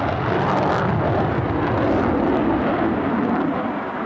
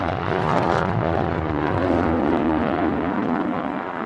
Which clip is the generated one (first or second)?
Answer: second